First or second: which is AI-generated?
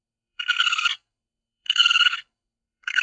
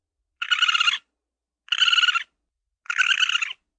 first